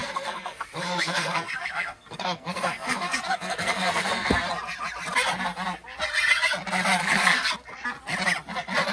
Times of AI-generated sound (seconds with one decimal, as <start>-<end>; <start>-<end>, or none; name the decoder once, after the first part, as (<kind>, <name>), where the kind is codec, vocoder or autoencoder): 0.0-4.3 (codec, SNAC); 7.0-7.5